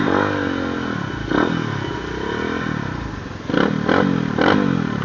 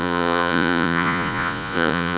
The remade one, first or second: second